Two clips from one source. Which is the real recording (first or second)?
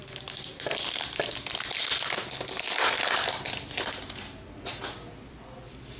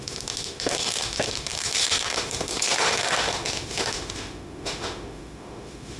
first